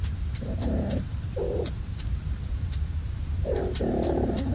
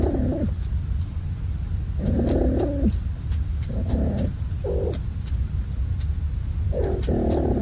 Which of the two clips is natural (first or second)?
second